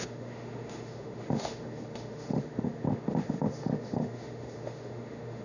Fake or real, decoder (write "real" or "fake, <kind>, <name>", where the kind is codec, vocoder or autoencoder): fake, autoencoder, DAC-VAE